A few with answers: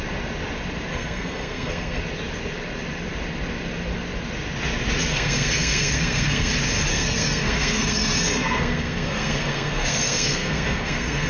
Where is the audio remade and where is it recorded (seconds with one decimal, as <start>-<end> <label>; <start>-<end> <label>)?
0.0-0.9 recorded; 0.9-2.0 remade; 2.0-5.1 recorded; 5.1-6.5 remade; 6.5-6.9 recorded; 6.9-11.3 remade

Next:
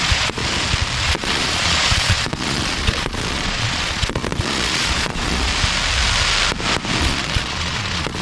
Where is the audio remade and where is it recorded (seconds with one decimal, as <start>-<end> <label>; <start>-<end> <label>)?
0.0-0.4 remade; 0.4-1.0 recorded; 1.0-5.5 remade; 5.5-7.0 recorded; 7.0-8.2 remade

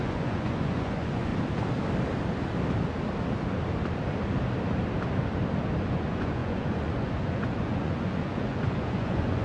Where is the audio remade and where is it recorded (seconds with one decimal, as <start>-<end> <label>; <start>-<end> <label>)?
0.0-1.3 remade; 1.3-5.8 recorded; 5.8-9.4 remade

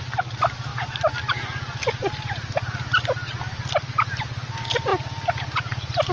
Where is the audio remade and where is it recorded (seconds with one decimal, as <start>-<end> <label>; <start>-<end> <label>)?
0.0-6.1 recorded

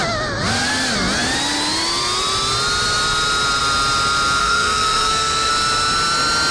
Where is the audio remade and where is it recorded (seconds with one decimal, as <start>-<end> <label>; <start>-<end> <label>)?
0.0-4.4 recorded; 4.4-5.5 remade; 5.5-6.5 recorded